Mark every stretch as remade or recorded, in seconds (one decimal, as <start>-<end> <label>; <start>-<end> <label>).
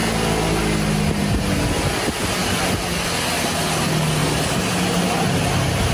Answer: 0.0-5.9 recorded